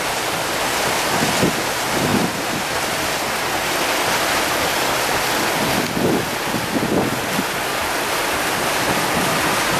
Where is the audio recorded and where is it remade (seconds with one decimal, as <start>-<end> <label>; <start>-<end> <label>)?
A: 0.0-9.8 recorded